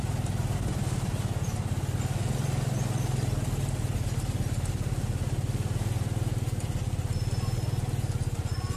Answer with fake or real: real